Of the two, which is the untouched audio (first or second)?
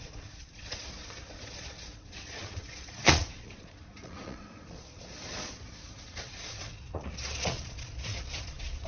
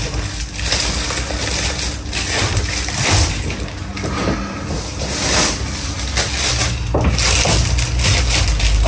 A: second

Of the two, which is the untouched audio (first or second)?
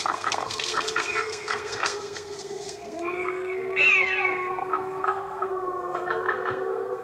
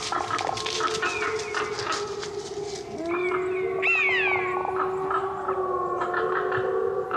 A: second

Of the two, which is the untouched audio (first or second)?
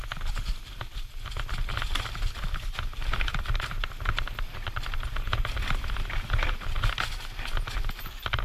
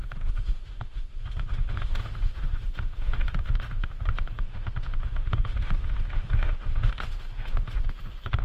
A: first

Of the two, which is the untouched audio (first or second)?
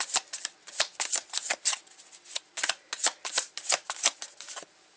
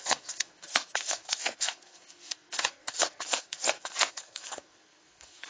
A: first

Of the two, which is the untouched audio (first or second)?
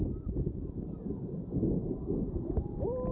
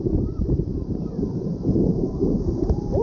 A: first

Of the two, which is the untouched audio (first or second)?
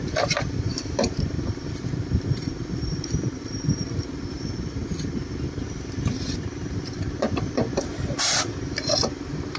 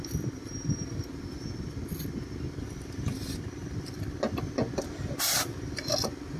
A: second